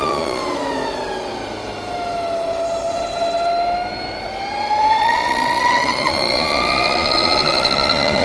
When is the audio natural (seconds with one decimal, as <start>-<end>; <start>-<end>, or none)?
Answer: 0.4-5.0